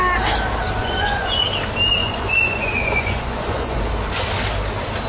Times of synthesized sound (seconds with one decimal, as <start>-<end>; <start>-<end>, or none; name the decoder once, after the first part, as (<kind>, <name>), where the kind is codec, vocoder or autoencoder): 0.8-1.4 (vocoder, Vocos); 2.0-3.8